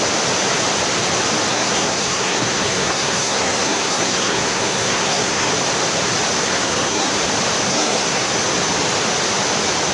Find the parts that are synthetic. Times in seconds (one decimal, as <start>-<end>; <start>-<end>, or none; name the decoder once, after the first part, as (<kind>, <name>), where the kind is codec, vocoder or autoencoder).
1.5-5.5 (codec, SNAC); 6.4-7.1; 7.7-8.3